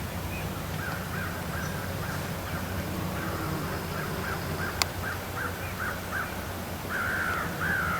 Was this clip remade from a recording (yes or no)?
no